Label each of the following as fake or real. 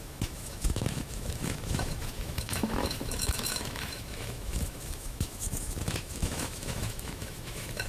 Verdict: fake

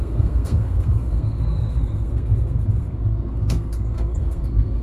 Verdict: fake